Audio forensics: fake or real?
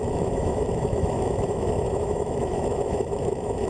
fake